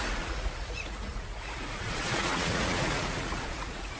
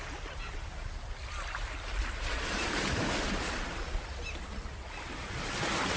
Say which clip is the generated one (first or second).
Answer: first